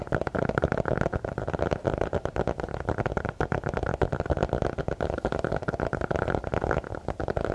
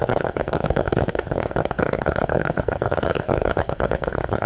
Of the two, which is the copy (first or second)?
second